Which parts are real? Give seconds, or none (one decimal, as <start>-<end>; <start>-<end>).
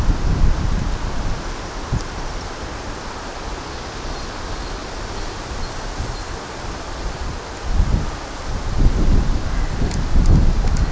0.0-10.9